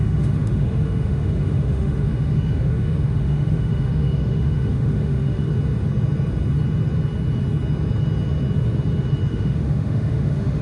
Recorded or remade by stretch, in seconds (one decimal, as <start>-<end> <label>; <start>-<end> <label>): 0.0-5.5 remade; 5.5-9.3 recorded; 9.3-10.6 remade